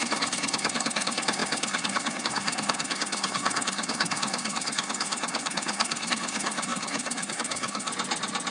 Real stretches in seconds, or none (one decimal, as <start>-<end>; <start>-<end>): 7.9-8.5